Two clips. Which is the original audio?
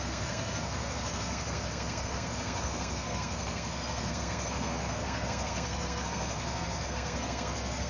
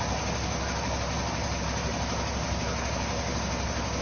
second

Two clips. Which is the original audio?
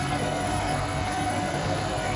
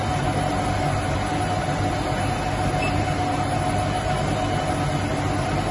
second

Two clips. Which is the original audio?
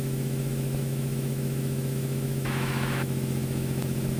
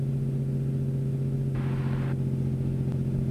second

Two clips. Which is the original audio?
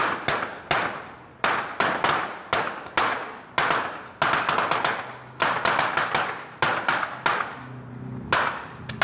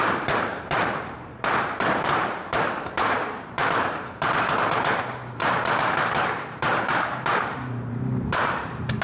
first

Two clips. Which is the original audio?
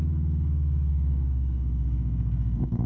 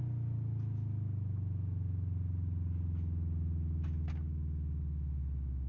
second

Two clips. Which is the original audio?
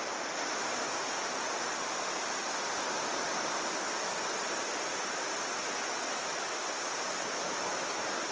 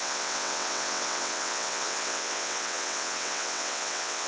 first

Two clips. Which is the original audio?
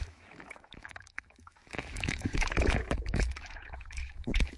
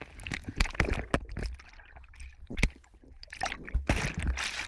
second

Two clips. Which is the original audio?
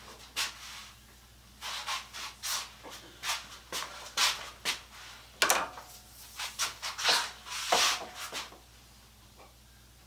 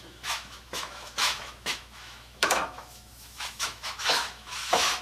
first